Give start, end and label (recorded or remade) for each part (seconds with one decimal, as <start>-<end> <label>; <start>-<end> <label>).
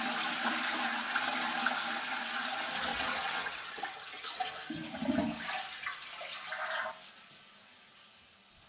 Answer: 0.0-2.9 recorded; 2.9-4.5 remade; 4.5-8.7 recorded